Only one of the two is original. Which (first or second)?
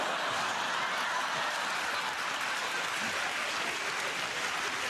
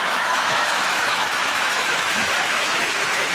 first